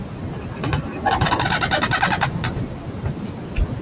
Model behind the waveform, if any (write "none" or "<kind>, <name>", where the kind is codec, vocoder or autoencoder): none